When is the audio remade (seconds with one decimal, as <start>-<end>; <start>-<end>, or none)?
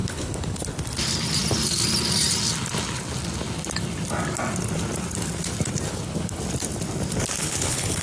0.0-0.6; 5.9-6.4; 7.4-8.0